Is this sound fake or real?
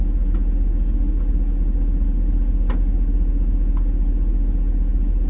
real